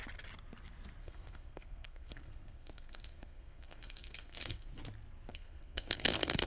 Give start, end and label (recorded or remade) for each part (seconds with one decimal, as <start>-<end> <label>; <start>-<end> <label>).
0.0-1.0 recorded; 1.0-4.7 remade; 4.7-5.3 recorded; 5.3-6.5 remade